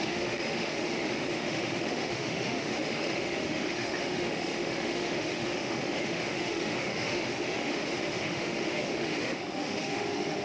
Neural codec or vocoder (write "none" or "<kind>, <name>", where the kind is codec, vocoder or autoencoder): autoencoder, DAC-VAE